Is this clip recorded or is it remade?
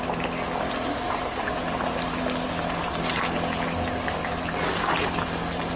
recorded